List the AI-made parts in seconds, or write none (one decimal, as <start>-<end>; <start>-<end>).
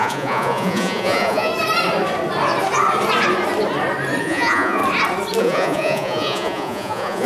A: 0.0-1.5; 4.2-4.8; 5.4-7.3